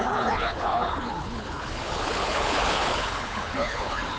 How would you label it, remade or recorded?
remade